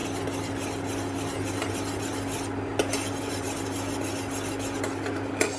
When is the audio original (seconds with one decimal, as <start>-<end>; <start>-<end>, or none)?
0.0-5.6